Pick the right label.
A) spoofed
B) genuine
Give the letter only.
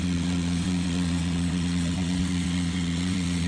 A